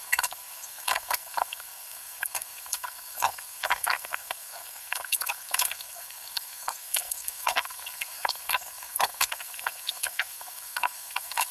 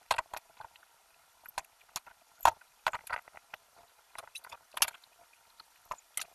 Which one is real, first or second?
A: second